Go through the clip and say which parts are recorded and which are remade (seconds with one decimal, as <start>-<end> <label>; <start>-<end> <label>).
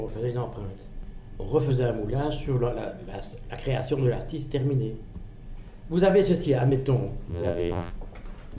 0.0-7.3 recorded; 7.3-7.9 remade; 7.9-8.6 recorded